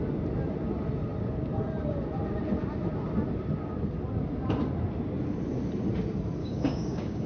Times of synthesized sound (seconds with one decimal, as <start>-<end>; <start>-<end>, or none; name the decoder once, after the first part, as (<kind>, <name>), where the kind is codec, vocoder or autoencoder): 6.4-7.3 (codec, DAC)